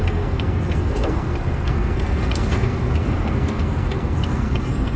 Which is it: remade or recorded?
remade